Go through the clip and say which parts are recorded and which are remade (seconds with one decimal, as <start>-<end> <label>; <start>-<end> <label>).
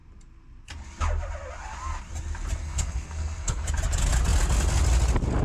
0.0-2.6 recorded; 2.6-3.7 remade; 3.7-5.4 recorded